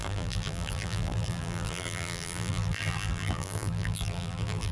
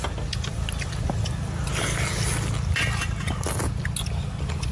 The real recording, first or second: second